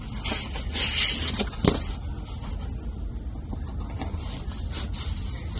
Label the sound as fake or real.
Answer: real